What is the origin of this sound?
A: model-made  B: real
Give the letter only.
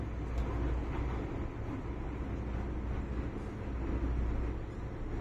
B